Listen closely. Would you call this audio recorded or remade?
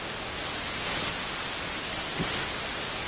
recorded